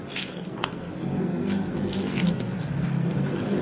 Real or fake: fake